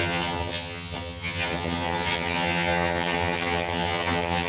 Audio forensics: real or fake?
fake